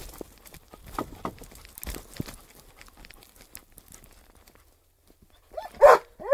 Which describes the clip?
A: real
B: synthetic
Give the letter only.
A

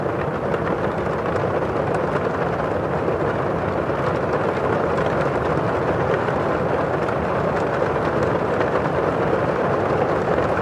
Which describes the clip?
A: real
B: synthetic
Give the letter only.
A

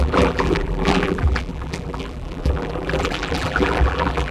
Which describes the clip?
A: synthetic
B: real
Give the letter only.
A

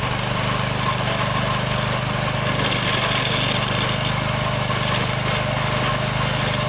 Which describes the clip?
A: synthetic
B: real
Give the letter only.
B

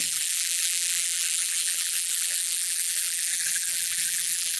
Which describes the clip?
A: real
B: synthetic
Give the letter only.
B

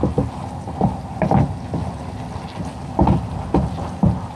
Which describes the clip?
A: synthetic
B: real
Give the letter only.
B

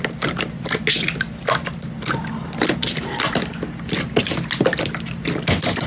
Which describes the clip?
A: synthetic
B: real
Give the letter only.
B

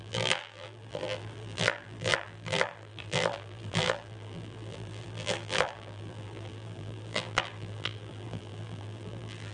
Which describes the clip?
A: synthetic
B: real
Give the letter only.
A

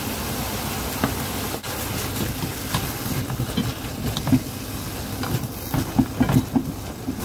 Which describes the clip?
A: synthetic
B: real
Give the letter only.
B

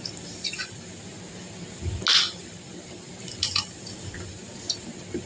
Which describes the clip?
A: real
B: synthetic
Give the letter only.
A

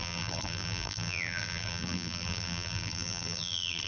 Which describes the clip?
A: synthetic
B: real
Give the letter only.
A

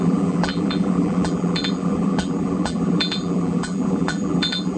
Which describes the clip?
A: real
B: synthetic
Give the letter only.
B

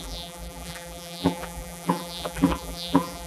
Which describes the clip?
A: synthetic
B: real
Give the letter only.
A